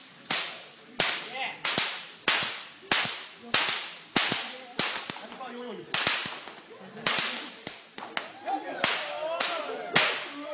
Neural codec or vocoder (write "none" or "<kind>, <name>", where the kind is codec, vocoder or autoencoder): none